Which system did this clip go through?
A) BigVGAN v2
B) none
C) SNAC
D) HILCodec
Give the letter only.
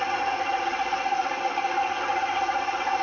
B